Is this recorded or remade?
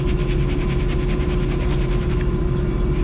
recorded